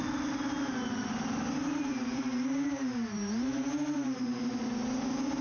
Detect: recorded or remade recorded